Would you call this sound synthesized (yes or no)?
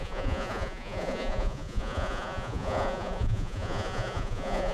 yes